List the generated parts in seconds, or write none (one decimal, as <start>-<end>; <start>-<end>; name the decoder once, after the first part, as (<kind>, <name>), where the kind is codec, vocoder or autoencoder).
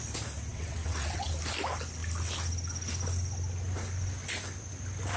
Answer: 0.5-1.3 (vocoder, WaveNeXt)